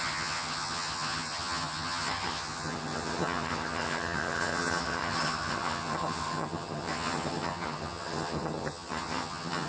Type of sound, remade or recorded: remade